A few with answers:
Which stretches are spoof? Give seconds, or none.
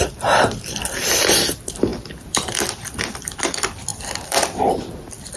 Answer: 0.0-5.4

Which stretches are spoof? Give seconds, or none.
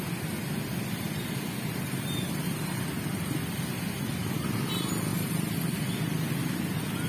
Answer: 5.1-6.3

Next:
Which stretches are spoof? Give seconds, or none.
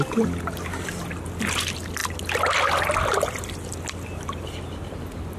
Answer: none